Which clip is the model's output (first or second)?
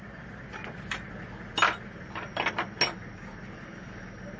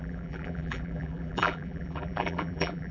second